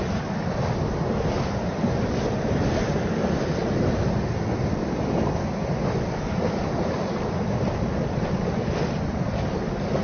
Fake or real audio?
real